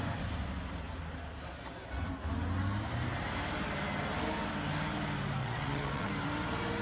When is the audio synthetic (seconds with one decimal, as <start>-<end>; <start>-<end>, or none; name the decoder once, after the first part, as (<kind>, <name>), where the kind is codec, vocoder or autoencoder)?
5.4-6.1 (vocoder, WaveNeXt)